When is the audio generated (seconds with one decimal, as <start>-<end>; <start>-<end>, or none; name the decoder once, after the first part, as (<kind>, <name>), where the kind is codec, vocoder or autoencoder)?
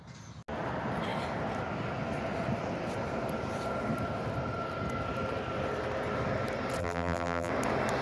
6.8-7.5 (vocoder, BigVGAN v2)